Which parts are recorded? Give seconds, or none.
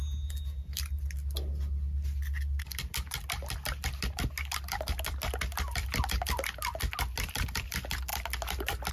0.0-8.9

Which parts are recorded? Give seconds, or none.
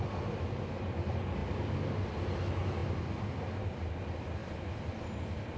0.0-4.4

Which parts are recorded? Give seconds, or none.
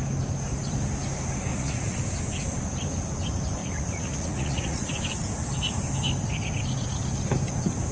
0.0-1.5; 2.0-3.6; 5.0-7.9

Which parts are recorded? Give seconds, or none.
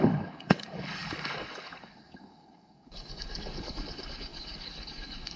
none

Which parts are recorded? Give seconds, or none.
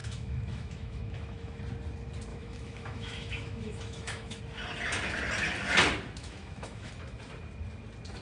1.6-2.3; 4.4-6.2; 6.9-8.2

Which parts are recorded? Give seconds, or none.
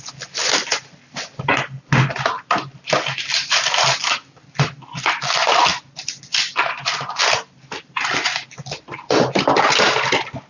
0.0-10.5